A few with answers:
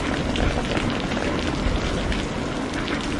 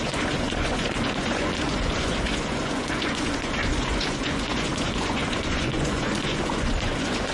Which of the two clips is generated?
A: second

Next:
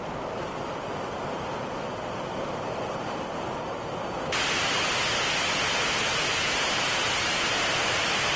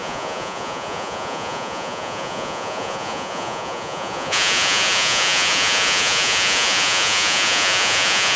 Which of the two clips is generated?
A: second